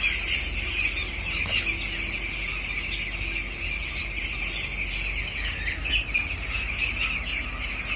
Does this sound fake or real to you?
real